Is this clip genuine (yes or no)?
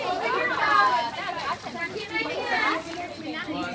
yes